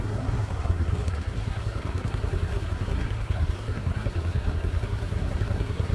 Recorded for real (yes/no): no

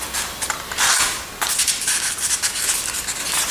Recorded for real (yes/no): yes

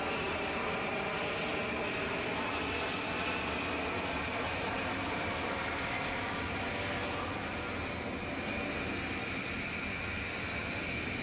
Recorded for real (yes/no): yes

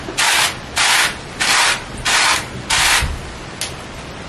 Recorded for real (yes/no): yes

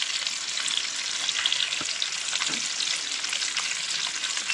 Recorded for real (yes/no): yes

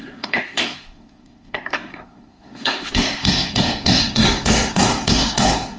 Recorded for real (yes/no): no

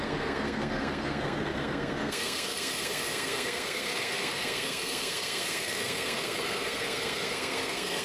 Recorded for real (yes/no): no